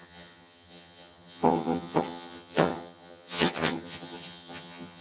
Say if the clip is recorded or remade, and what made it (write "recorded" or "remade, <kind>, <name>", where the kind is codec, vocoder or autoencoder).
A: remade, vocoder, HiFi-GAN